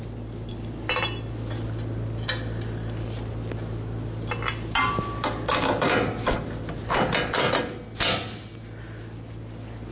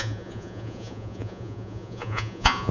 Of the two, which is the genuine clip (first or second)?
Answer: first